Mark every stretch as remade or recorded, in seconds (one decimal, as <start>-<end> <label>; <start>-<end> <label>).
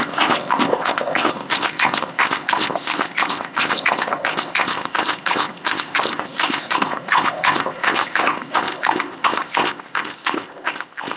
0.0-11.2 remade